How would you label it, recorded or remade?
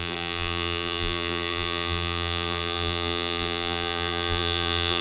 remade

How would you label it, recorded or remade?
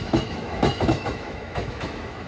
remade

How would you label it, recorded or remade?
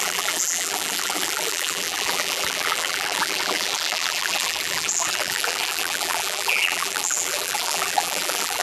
remade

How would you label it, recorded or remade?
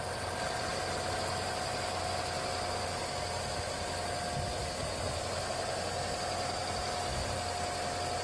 recorded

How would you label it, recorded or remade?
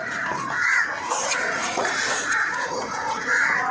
remade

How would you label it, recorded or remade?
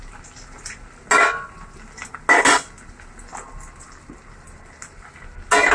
recorded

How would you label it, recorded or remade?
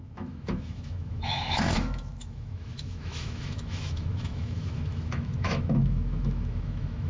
remade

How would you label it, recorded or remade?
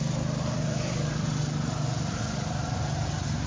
recorded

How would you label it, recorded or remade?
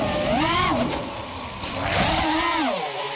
recorded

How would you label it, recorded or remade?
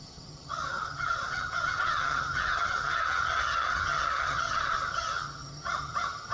remade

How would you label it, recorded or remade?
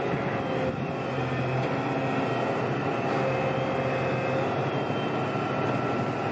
recorded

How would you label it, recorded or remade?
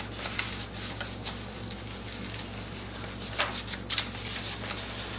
recorded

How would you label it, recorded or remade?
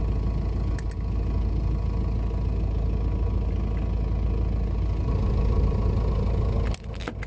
recorded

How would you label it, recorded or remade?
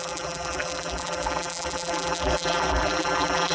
remade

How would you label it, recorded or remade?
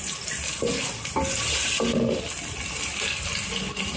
recorded